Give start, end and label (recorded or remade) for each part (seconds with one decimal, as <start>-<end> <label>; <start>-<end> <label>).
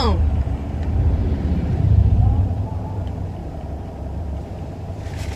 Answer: 0.0-3.4 remade; 3.4-4.2 recorded; 4.2-5.4 remade